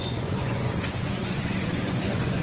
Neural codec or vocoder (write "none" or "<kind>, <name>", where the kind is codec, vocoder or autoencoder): vocoder, Vocos